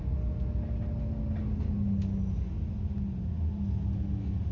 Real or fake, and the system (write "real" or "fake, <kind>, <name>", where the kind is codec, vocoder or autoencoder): real